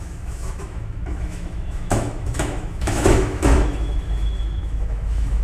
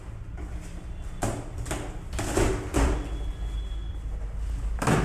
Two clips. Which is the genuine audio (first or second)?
second